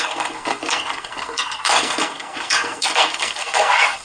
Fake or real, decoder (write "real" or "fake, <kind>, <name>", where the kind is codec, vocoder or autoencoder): fake, codec, SNAC